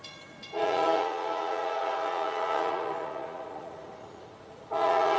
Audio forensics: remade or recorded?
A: remade